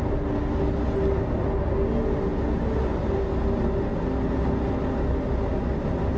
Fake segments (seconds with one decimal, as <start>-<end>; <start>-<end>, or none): none